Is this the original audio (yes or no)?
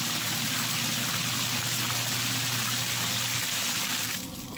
yes